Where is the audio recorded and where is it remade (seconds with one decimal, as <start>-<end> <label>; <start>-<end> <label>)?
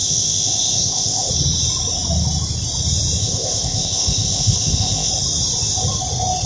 0.0-1.3 remade; 1.3-3.2 recorded; 3.2-5.1 remade; 5.1-6.5 recorded